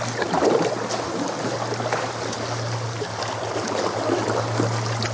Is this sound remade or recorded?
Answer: recorded